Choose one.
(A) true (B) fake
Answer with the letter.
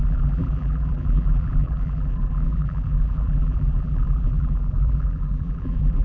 B